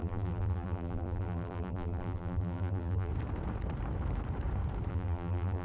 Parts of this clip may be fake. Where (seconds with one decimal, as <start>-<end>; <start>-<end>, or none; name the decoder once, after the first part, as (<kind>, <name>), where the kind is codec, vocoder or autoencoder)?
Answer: 0.0-3.1 (vocoder, BigVGAN v2); 4.9-5.6